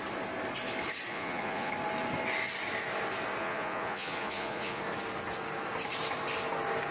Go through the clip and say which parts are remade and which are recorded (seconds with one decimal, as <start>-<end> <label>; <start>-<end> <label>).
0.0-1.1 recorded; 1.1-1.7 remade; 1.7-3.4 recorded; 3.4-4.8 remade; 4.8-6.9 recorded